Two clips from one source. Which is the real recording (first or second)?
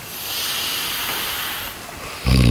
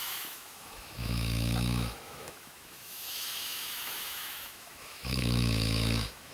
first